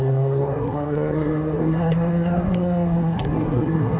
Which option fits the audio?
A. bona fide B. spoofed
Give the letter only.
B